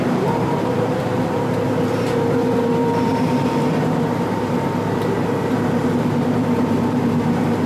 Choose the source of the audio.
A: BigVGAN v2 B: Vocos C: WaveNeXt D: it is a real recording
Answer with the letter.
A